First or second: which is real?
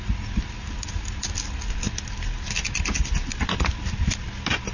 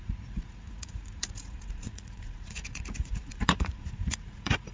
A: first